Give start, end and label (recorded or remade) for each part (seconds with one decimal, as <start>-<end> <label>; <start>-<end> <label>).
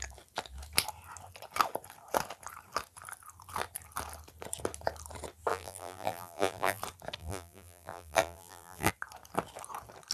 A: 0.0-5.5 recorded; 5.5-6.8 remade; 6.8-7.2 recorded; 7.2-8.9 remade; 8.9-10.1 recorded